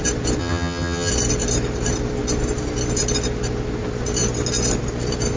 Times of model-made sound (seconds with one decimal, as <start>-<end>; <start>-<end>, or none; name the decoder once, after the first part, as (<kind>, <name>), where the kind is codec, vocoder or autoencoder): 0.4-1.1 (vocoder, HiFi-GAN)